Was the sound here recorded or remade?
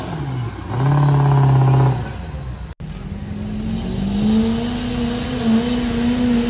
recorded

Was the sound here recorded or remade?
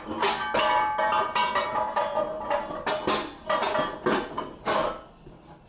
recorded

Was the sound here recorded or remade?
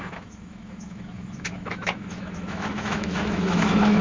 remade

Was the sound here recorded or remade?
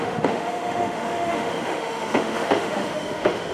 remade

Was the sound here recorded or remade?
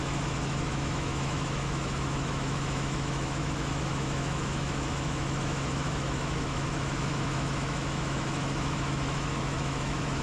remade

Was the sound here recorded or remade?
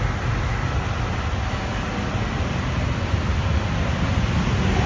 recorded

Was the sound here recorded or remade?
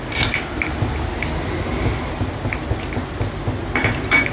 recorded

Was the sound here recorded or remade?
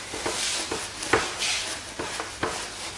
recorded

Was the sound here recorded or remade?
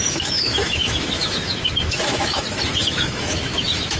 remade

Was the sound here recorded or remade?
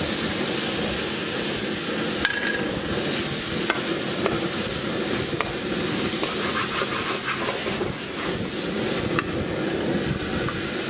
recorded